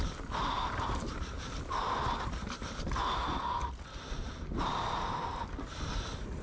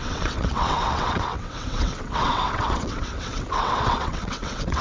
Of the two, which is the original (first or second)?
first